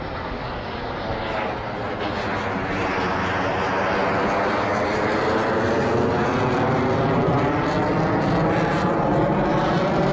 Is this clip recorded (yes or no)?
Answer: yes